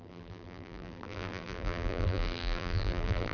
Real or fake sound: fake